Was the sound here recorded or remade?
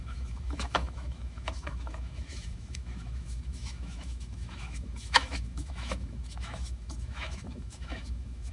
remade